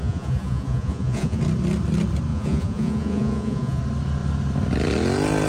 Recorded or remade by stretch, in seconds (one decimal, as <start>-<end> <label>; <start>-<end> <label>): 0.0-1.4 remade; 1.4-2.3 recorded; 2.3-3.8 remade; 3.8-5.5 recorded